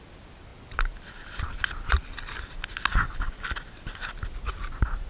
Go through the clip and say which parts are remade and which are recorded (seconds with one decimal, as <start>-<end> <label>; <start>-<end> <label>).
0.0-5.1 recorded